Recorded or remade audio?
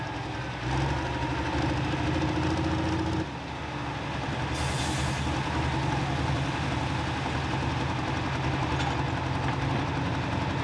recorded